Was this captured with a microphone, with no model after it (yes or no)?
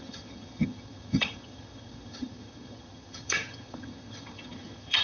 no